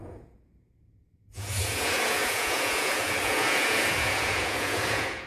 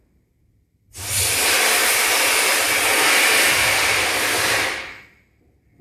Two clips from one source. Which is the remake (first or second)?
first